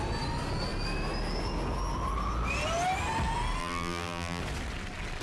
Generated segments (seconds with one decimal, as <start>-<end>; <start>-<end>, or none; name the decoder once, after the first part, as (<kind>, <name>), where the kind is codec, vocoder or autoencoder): 3.6-4.4 (vocoder, BigVGAN v2)